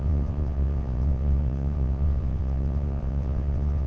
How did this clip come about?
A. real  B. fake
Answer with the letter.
B